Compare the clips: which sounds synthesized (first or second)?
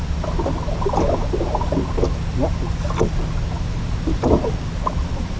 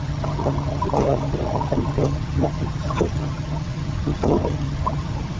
second